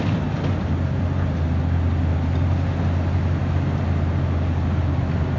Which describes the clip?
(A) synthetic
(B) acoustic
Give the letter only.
B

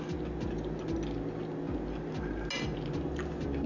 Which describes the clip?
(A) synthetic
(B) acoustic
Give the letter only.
B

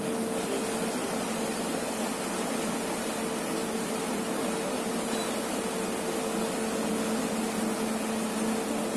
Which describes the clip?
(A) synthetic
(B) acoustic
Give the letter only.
B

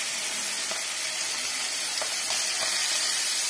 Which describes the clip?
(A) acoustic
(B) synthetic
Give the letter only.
B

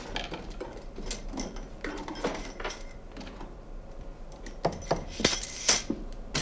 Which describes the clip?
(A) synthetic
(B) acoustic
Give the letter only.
B